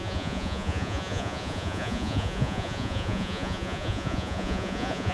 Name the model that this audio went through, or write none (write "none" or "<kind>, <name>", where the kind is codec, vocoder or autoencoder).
vocoder, Vocos